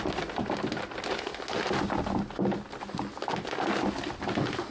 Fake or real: real